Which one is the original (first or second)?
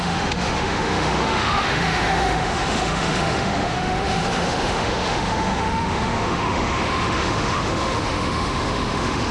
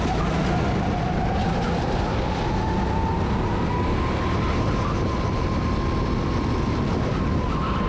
second